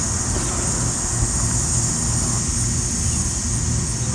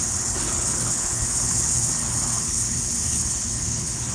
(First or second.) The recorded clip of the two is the first